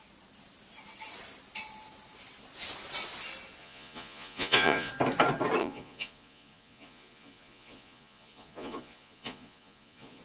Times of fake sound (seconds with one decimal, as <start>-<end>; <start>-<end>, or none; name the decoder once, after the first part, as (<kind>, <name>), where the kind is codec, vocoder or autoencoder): 3.6-4.9 (vocoder, Vocos); 5.6-10.2